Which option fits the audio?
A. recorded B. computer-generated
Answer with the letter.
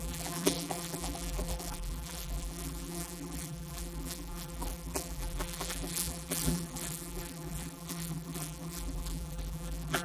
B